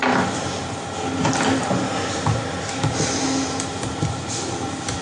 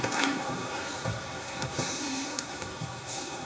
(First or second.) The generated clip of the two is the second